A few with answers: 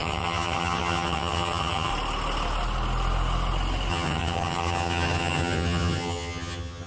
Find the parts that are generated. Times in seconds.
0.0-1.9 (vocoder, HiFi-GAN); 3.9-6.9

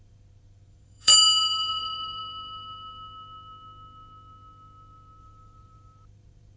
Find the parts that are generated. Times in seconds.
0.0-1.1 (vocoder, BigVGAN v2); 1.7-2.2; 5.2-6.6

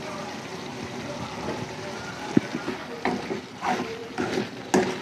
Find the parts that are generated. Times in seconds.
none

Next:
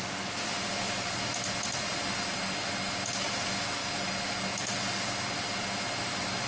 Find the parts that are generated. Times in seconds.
none